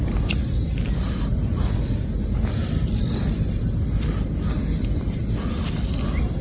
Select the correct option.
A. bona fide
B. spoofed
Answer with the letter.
A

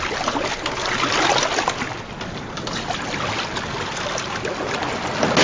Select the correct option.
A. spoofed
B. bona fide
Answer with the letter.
B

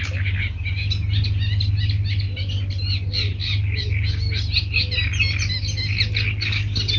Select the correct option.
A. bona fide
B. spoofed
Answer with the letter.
A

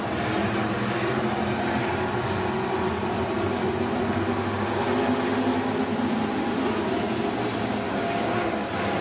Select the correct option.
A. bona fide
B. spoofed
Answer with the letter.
A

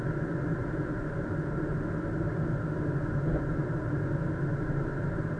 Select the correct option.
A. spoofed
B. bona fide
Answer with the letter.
B